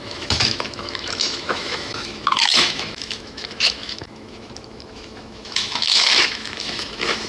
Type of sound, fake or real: fake